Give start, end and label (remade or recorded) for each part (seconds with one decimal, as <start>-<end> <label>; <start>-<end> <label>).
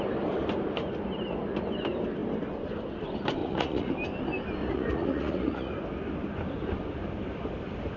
0.0-3.4 recorded; 3.4-3.9 remade; 3.9-4.6 recorded; 4.6-5.7 remade; 5.7-8.0 recorded